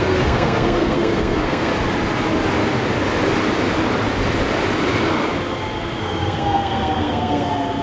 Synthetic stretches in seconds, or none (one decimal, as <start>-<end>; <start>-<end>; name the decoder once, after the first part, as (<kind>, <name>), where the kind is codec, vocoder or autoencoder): 0.0-1.7 (codec, SNAC); 6.0-7.8